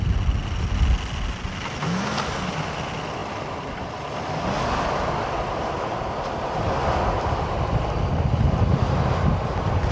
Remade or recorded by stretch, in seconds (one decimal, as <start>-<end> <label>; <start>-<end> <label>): 0.0-9.9 recorded